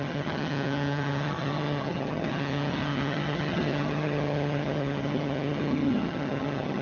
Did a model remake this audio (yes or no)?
yes